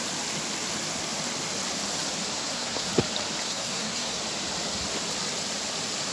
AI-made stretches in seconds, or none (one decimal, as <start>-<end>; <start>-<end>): 2.3-2.9; 3.4-4.2